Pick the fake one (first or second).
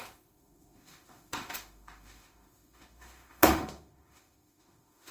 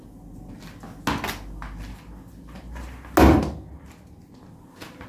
first